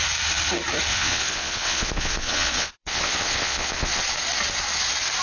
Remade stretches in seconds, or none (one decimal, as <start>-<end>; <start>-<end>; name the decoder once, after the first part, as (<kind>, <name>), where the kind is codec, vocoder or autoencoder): 0.9-4.0 (vocoder, WaveNeXt)